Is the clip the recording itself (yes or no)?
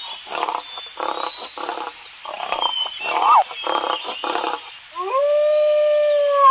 yes